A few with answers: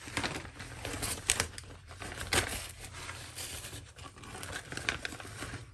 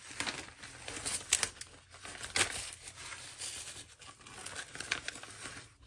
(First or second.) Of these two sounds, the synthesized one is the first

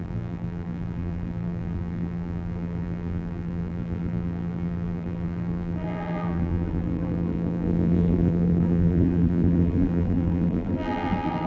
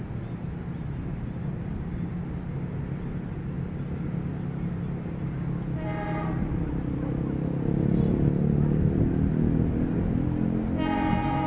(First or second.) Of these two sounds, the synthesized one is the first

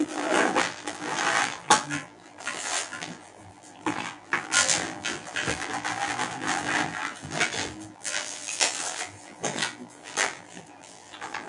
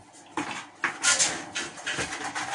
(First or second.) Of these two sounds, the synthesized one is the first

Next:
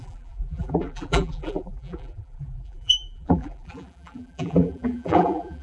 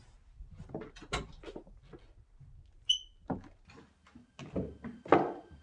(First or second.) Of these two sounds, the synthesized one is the first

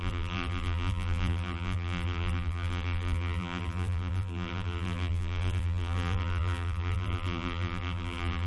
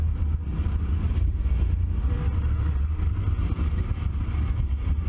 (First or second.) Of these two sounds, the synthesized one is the first